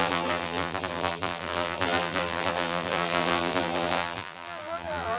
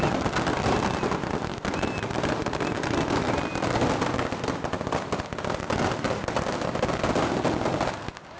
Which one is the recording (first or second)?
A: second